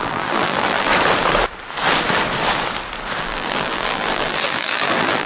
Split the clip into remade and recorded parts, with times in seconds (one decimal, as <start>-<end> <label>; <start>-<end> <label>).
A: 0.0-0.9 remade; 0.9-3.2 recorded; 3.2-5.3 remade